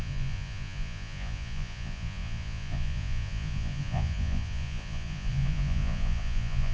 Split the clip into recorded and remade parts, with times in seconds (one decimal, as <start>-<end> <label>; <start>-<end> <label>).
0.0-6.7 remade